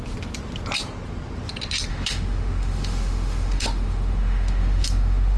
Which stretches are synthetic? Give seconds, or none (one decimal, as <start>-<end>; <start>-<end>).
1.9-5.4